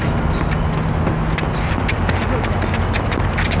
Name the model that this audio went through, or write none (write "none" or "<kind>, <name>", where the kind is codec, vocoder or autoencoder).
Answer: none